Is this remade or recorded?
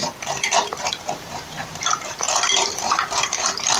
remade